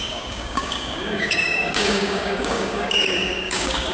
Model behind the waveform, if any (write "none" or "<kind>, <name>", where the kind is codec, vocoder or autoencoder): codec, DAC